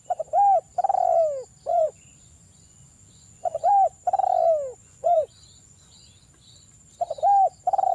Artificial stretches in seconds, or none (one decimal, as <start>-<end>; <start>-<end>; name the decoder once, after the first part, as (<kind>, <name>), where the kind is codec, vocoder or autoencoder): 1.7-3.7 (vocoder, Vocos); 4.8-6.7